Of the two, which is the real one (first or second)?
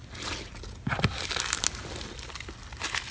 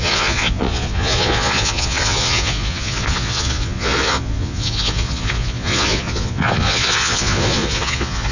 first